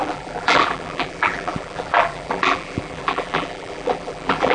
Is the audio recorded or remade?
remade